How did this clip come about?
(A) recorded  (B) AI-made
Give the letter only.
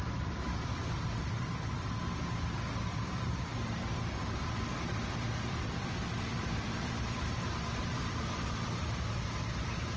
B